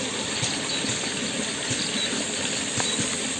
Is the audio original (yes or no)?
yes